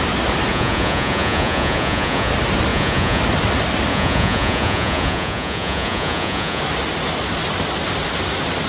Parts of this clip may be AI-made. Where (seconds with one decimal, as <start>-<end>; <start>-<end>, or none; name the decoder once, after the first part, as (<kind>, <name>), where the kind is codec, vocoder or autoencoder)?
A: 0.5-2.3 (vocoder, Vocos); 2.7-3.2; 3.9-6.6

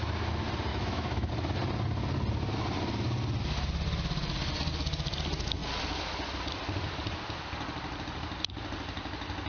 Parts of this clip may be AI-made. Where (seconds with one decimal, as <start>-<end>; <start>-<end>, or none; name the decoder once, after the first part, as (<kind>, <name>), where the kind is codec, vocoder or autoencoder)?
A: 0.7-1.3 (autoencoder, DAC-VAE)

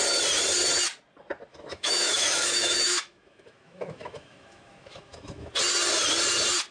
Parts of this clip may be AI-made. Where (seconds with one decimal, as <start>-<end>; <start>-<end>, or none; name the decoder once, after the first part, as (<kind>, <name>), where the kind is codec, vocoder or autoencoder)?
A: 1.5-5.5 (autoencoder, DAC-VAE)